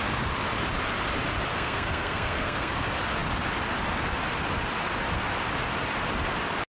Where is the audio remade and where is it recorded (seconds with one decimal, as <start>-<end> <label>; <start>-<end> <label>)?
0.0-1.5 recorded; 1.5-2.7 remade; 2.7-6.7 recorded